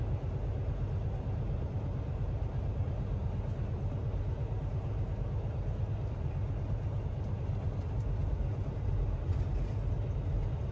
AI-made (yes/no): no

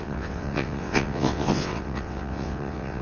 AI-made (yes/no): yes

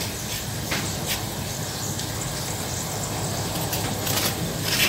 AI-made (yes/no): no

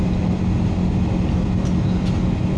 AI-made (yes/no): no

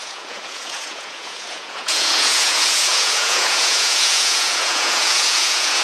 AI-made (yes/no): yes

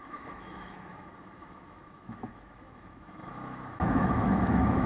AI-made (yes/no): yes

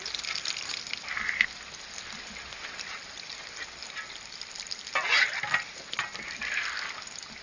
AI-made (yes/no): no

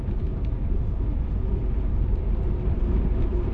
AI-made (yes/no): no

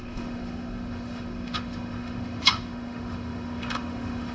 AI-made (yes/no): yes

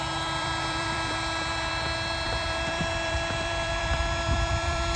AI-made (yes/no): yes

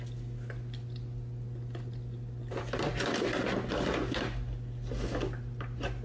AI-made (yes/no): no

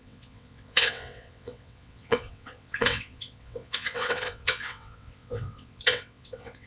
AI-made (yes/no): yes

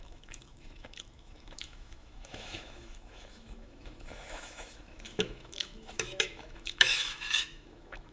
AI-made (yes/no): yes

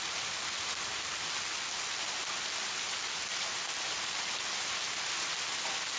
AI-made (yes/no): no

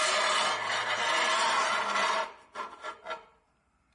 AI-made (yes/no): no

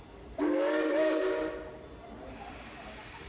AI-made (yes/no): no